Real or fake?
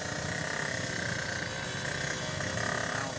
real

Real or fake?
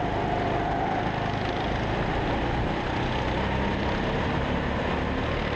real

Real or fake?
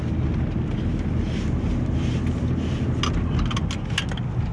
real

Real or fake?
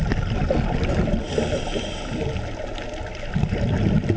real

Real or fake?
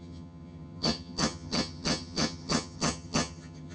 fake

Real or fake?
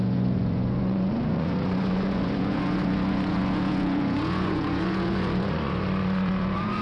fake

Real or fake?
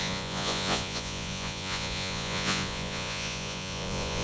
fake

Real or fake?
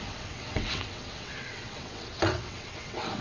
fake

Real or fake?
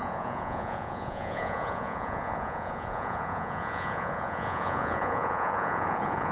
fake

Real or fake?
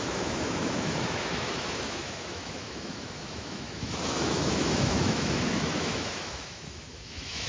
fake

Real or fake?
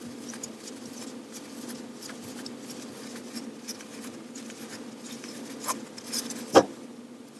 real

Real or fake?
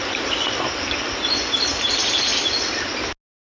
real